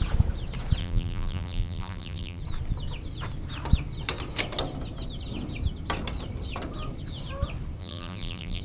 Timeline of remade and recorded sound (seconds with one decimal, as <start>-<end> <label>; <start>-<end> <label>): 0.0-0.8 recorded; 0.8-2.4 remade; 2.4-7.8 recorded; 7.8-8.6 remade